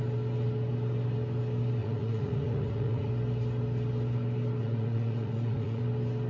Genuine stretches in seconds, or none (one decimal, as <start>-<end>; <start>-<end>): 0.0-1.8; 3.1-4.6; 5.8-6.3